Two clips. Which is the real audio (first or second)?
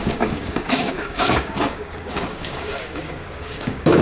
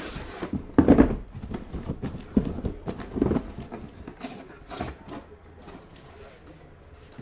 second